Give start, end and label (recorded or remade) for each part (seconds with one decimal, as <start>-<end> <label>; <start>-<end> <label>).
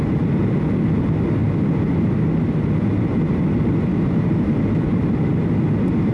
0.0-6.1 recorded